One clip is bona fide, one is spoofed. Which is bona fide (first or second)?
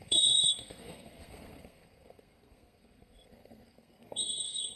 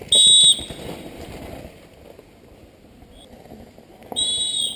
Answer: second